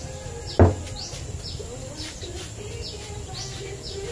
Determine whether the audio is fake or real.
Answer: real